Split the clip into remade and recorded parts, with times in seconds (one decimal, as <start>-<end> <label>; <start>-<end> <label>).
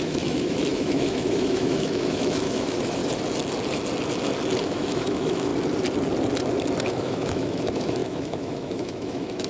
0.0-3.0 remade; 3.0-4.6 recorded; 4.6-5.5 remade; 5.5-6.9 recorded; 6.9-9.5 remade